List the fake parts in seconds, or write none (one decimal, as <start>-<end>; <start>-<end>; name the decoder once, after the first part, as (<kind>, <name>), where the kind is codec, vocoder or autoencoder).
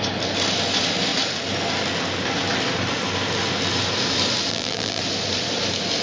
4.5-5.0 (vocoder, BigVGAN v2)